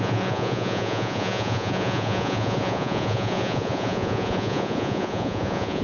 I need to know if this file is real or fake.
fake